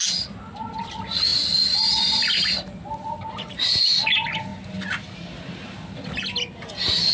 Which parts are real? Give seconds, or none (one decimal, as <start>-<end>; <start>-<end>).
0.0-1.3; 2.8-7.1